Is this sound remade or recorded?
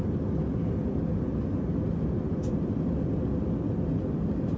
recorded